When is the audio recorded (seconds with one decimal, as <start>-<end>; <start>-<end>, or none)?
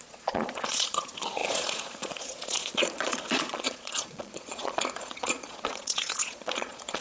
none